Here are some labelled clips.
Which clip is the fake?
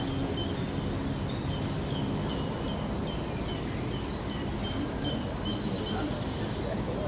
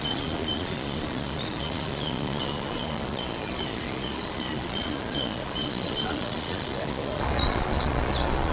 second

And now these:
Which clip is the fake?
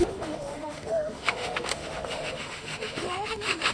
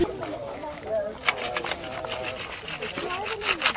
first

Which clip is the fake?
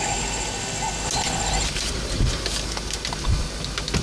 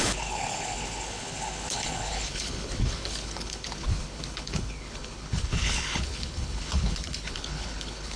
second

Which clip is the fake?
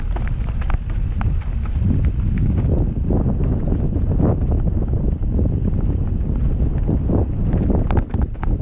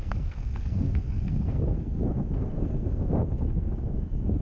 second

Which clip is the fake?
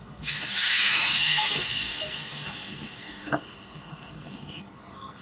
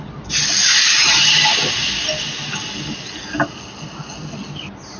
first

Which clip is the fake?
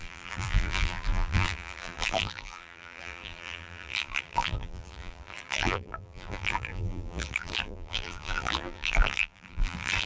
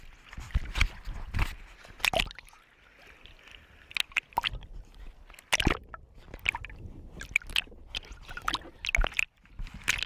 first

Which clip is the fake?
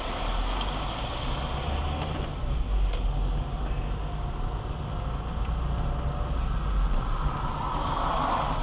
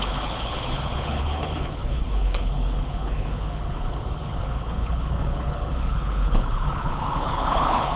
second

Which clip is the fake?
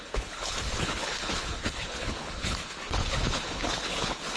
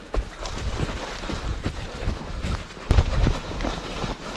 first